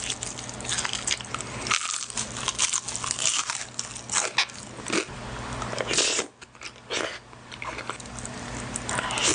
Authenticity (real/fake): real